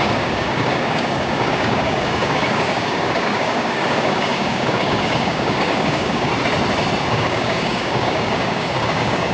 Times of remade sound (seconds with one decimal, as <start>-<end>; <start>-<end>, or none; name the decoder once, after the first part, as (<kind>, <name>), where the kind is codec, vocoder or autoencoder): 0.0-6.3 (codec, DAC); 7.1-9.3

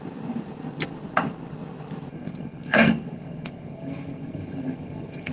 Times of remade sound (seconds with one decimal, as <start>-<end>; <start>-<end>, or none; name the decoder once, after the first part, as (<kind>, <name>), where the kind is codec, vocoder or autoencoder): 2.1-5.3 (codec, SNAC)

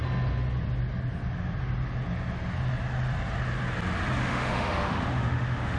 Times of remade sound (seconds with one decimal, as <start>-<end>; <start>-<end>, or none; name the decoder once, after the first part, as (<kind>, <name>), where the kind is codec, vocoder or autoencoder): 4.2-5.8 (autoencoder, DAC-VAE)

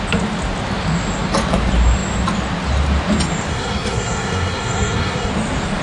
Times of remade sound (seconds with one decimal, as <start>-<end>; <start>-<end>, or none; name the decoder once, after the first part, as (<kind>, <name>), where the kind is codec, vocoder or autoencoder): 3.5-5.3 (codec, SNAC)

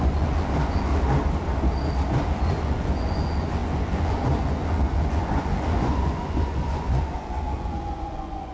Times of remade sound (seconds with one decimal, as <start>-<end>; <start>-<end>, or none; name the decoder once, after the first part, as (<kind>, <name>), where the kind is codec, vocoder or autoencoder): 0.0-0.9 (vocoder, Vocos); 2.1-8.5

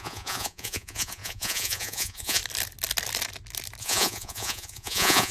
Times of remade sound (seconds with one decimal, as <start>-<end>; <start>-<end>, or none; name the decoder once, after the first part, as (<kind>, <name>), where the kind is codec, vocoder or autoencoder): 0.0-2.4 (vocoder, Vocos); 3.8-5.3

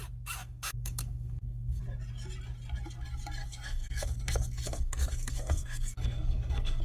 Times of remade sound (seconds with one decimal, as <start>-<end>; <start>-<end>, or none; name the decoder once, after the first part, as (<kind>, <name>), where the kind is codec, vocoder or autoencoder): 0.4-1.8 (codec, SNAC); 3.4-6.8

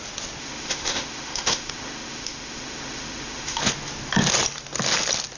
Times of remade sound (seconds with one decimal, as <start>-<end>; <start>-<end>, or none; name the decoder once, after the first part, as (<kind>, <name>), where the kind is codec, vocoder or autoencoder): 0.4-3.6 (autoencoder, DAC-VAE)